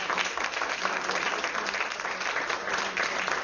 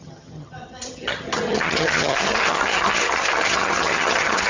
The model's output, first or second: second